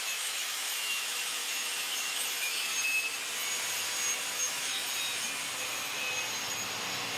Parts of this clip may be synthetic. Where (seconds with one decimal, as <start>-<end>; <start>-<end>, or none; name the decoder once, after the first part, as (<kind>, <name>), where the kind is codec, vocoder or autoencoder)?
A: 0.0-2.7 (autoencoder, DAC-VAE); 4.3-4.8